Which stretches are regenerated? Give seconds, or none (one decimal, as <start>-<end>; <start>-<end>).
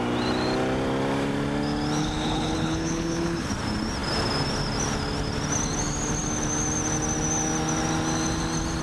2.0-3.5